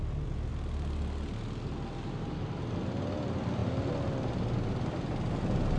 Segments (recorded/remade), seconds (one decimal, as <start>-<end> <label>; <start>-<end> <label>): 0.0-5.8 recorded